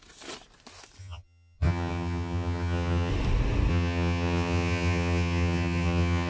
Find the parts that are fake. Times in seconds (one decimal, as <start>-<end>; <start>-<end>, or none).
1.0-3.1; 3.7-6.3